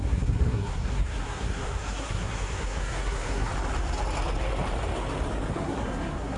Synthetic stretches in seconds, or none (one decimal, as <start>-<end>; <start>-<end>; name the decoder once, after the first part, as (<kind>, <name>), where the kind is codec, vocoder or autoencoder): 0.0-3.5 (codec, SNAC); 5.5-6.4